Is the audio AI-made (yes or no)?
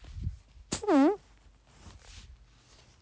no